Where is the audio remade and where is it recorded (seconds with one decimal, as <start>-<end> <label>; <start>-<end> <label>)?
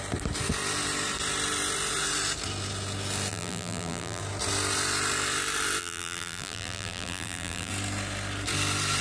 0.0-3.3 recorded; 3.3-4.2 remade; 4.2-5.8 recorded; 5.8-7.7 remade; 7.7-9.0 recorded